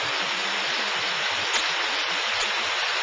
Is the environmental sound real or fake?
real